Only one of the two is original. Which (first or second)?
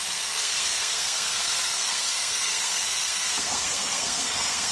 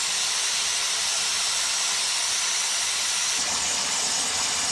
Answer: second